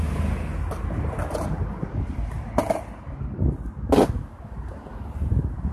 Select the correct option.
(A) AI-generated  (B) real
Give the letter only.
B